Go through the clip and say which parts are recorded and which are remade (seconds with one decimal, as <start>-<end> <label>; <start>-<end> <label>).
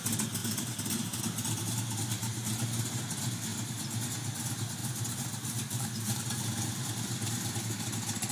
0.0-0.4 recorded; 0.4-1.2 remade; 1.2-2.2 recorded; 2.2-3.0 remade; 3.0-4.8 recorded; 4.8-7.7 remade; 7.7-8.3 recorded